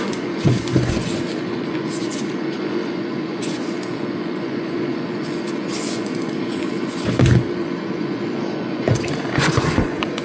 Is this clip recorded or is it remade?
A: remade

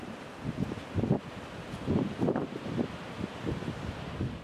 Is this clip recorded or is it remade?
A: recorded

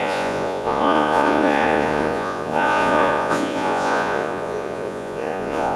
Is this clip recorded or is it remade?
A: remade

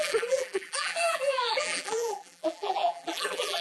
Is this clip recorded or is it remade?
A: remade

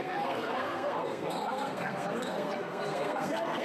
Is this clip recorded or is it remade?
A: remade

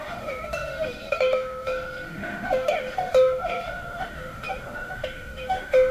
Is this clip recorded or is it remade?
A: remade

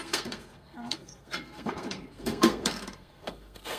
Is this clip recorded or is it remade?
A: remade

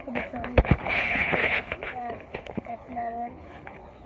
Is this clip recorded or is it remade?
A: remade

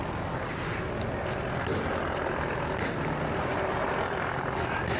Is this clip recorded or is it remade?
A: recorded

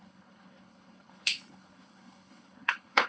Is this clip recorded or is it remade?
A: remade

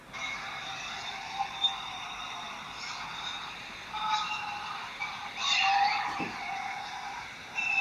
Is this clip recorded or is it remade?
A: remade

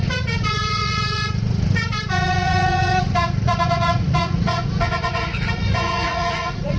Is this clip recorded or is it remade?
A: remade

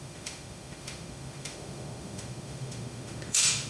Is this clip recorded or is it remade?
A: remade